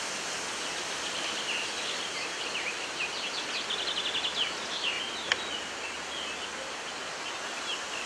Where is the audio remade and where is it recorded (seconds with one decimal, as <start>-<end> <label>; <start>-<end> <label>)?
0.0-8.1 recorded